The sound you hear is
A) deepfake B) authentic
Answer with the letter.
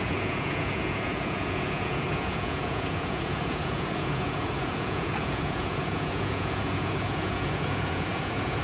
A